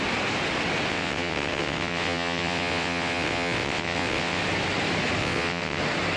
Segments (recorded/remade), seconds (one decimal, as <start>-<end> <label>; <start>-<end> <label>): 0.0-0.9 recorded; 0.9-4.4 remade; 4.4-5.2 recorded; 5.2-5.8 remade; 5.8-6.2 recorded